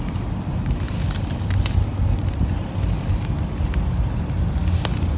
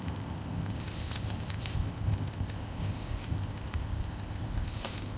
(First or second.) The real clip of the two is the first